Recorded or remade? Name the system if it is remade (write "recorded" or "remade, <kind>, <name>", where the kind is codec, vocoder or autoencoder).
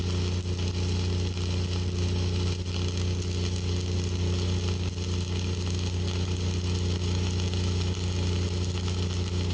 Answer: recorded